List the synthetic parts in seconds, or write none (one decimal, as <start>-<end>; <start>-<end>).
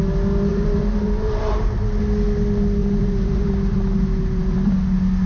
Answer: 0.5-2.0; 2.8-3.5